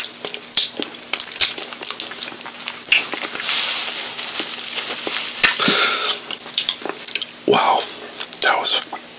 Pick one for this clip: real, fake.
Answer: real